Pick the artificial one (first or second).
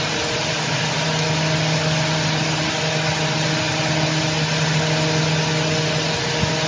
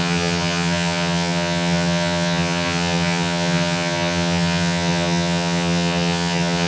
second